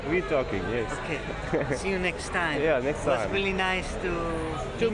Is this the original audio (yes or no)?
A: yes